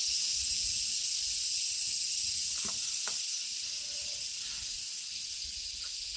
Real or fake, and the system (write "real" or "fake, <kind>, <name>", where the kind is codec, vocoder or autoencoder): real